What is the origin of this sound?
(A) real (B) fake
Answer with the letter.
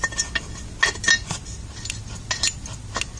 A